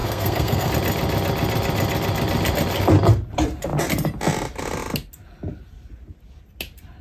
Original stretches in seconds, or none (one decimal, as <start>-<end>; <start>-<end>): 0.7-7.0